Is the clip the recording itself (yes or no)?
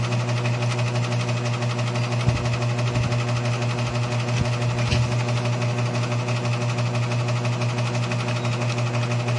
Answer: yes